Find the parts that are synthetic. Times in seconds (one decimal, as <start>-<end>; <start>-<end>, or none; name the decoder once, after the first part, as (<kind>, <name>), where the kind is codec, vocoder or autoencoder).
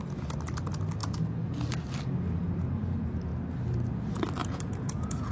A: 4.4-5.3 (vocoder, Vocos)